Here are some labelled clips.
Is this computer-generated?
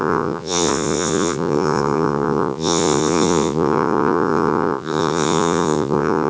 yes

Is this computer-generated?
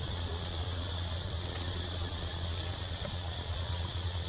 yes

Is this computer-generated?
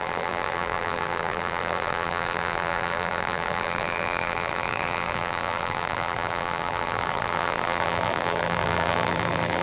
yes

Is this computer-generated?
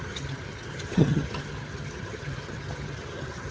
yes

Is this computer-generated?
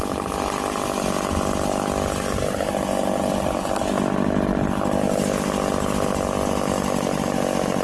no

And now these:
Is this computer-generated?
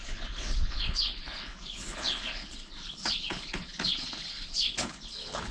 yes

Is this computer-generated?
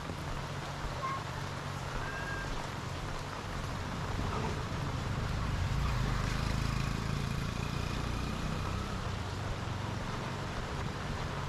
yes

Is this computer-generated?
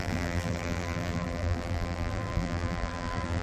yes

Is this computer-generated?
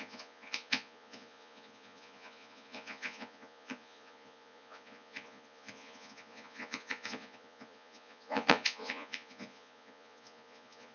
yes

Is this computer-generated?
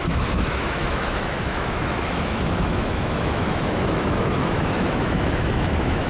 yes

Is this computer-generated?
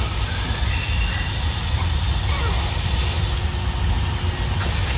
no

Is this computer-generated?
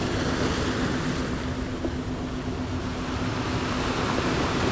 no